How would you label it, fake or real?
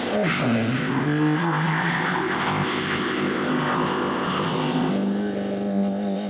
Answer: fake